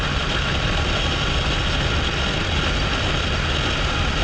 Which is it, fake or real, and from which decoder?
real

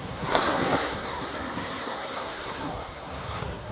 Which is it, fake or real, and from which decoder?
fake, codec, SNAC